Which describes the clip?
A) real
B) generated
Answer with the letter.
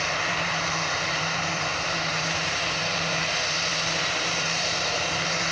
B